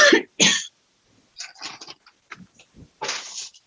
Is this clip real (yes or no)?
yes